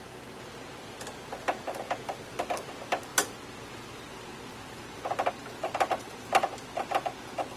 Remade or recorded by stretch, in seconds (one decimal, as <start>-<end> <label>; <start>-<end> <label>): 0.0-7.6 recorded